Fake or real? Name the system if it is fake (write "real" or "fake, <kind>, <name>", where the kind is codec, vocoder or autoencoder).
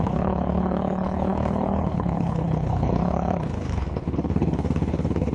fake, codec, HILCodec